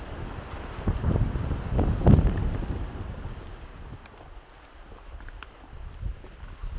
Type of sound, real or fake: real